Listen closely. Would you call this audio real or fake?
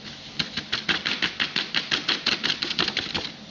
fake